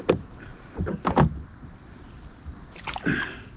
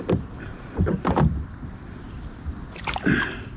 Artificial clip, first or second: second